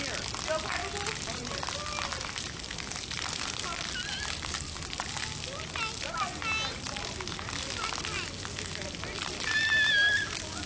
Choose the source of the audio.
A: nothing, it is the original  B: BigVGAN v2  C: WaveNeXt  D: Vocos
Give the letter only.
A